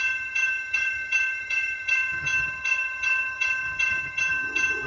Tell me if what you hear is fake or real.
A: fake